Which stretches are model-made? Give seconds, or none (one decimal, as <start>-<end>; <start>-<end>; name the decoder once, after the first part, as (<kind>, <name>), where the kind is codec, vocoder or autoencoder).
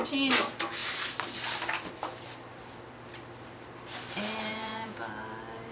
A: 4.5-5.0 (vocoder, Vocos)